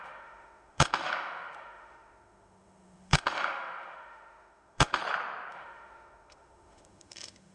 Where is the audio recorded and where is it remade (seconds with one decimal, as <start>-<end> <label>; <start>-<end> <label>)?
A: 0.0-5.0 remade; 5.0-5.5 recorded; 5.5-7.5 remade